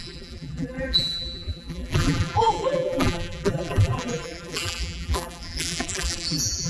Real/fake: fake